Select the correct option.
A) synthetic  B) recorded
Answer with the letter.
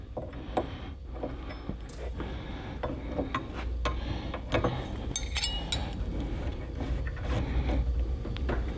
B